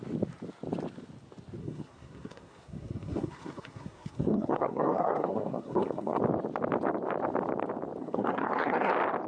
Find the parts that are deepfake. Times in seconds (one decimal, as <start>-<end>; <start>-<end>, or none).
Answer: 1.6-6.2; 8.0-8.9